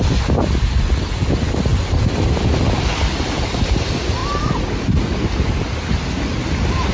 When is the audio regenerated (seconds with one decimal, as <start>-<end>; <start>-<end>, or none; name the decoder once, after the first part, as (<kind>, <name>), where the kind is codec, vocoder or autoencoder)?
0.0-0.8 (vocoder, BigVGAN v2); 1.7-3.7; 4.2-4.8